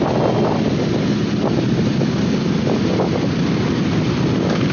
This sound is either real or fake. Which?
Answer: real